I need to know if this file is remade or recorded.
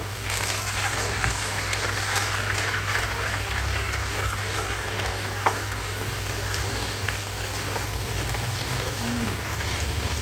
remade